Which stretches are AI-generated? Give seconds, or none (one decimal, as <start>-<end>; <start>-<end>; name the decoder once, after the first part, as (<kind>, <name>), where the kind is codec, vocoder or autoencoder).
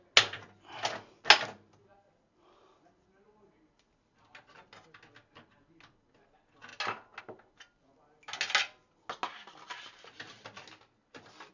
none